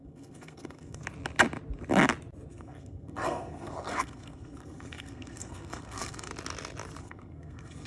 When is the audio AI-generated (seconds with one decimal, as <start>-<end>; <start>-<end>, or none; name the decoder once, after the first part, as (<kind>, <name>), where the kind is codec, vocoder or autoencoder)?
0.0-1.0 (codec, SNAC); 2.5-6.3; 7.0-7.9